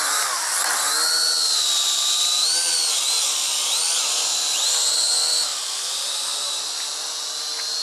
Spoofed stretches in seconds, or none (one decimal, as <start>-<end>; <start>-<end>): none